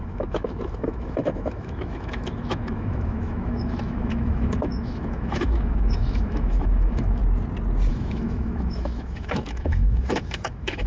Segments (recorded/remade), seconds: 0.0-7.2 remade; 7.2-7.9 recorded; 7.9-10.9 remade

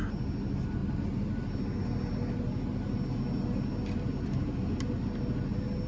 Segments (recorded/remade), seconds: 0.0-5.9 recorded

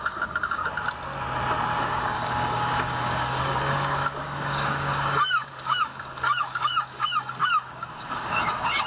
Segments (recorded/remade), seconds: 0.0-0.6 remade; 0.6-1.8 recorded; 1.8-8.9 remade